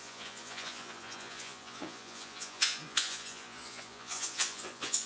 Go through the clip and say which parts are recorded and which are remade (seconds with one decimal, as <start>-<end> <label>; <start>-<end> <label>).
0.0-5.1 remade